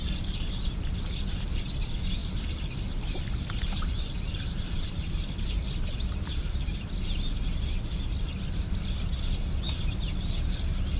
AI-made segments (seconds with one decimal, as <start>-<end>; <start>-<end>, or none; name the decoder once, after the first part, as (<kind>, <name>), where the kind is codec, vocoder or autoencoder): 2.2-2.8 (vocoder, BigVGAN v2); 3.6-5.1